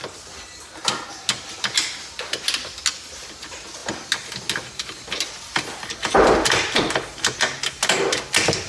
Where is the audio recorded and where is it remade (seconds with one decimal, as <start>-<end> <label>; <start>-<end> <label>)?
0.0-8.7 recorded

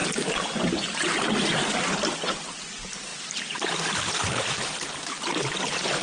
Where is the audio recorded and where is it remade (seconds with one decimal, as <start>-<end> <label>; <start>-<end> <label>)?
0.0-6.0 recorded

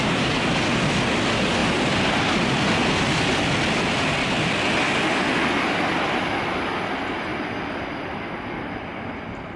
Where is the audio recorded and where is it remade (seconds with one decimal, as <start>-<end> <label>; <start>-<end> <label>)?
0.0-9.6 recorded

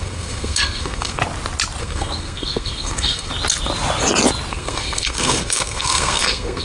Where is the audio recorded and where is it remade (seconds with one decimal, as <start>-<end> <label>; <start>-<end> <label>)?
0.0-1.2 remade; 1.2-1.8 recorded; 1.8-3.3 remade; 3.3-4.5 recorded; 4.5-6.6 remade

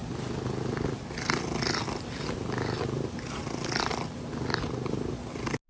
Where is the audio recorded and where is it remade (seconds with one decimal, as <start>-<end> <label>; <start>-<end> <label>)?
0.0-5.7 recorded

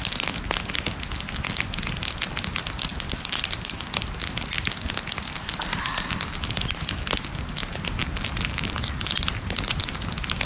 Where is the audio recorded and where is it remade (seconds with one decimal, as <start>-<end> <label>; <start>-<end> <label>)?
0.0-2.9 recorded; 2.9-3.8 remade; 3.8-8.0 recorded; 8.0-9.7 remade; 9.7-10.5 recorded

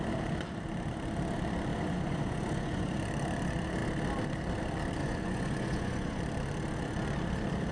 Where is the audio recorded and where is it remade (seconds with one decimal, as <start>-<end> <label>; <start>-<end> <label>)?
0.0-1.7 recorded; 1.7-3.0 remade; 3.0-5.0 recorded; 5.0-6.2 remade; 6.2-7.7 recorded